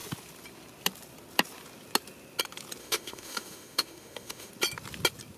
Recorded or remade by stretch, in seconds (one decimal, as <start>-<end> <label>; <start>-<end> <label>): 0.0-2.8 recorded; 2.8-4.5 remade; 4.5-5.4 recorded